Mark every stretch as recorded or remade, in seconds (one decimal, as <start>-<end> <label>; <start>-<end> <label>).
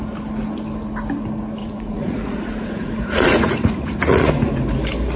0.0-1.6 recorded; 1.6-4.3 remade; 4.3-5.2 recorded